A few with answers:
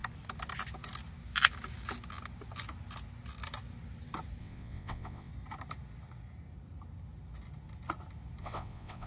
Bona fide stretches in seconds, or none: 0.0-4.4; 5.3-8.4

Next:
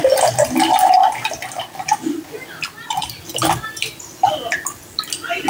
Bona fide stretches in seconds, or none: 0.0-5.5

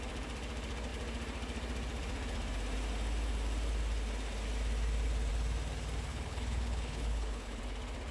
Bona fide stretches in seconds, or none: 0.0-6.1; 7.6-8.1

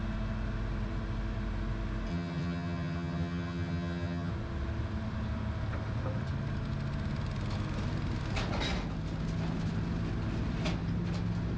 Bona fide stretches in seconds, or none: 0.0-2.1; 4.3-11.6

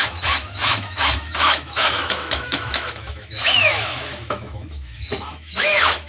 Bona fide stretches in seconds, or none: none

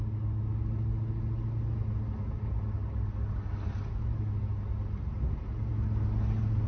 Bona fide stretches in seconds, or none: 0.0-6.7

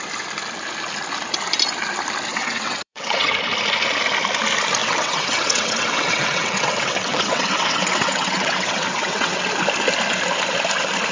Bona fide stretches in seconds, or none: 0.0-2.3; 3.3-4.8; 9.4-11.1